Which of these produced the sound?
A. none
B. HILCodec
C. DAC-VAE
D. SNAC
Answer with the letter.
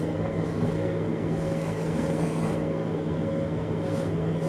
D